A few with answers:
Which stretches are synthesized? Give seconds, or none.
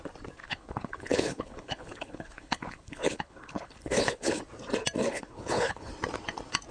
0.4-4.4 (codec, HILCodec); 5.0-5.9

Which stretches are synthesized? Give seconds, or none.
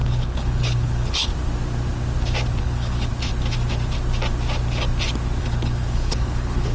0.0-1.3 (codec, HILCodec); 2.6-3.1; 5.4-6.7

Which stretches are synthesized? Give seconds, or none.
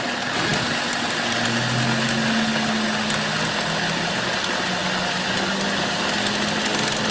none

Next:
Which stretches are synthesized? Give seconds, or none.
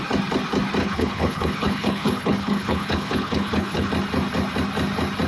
0.8-3.9 (codec, HILCodec)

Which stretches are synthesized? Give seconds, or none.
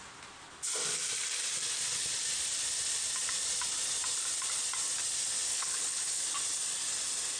5.5-6.2 (codec, HILCodec)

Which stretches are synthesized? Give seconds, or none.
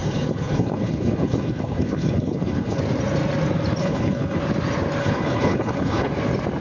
0.0-2.8 (codec, HILCodec); 3.8-4.4; 5.0-6.1